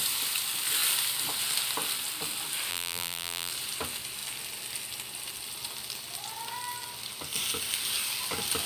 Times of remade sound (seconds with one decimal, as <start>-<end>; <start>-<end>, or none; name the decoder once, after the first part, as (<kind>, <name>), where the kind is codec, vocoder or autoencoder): 2.7-3.5 (vocoder, BigVGAN v2)